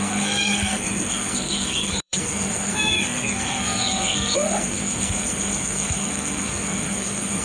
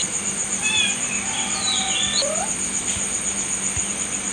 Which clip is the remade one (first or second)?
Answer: first